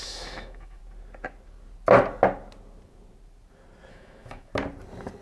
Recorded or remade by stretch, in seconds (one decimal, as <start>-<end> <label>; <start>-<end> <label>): 0.0-0.8 remade; 0.8-3.9 recorded; 3.9-4.5 remade; 4.5-5.2 recorded